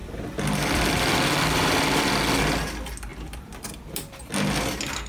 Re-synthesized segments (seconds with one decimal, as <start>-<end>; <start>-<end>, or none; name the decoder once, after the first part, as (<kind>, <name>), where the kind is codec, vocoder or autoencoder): 0.0-2.1 (vocoder, BigVGAN v2); 3.1-4.2